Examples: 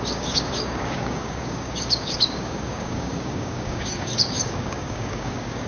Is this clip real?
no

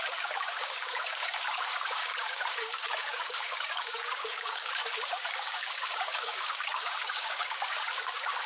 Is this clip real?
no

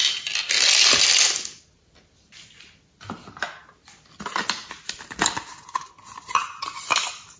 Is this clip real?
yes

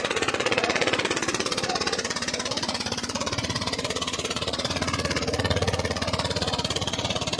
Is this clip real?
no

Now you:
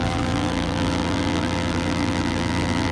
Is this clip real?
no